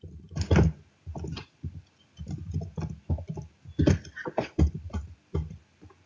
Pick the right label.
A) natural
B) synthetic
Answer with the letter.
A